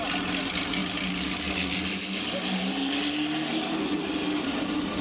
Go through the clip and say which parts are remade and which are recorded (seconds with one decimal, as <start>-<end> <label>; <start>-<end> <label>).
0.0-5.0 recorded